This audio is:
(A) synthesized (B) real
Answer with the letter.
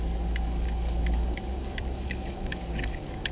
A